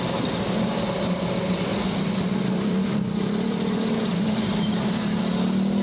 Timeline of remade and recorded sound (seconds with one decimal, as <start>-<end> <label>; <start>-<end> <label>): 0.0-1.7 recorded; 1.7-5.2 remade; 5.2-5.8 recorded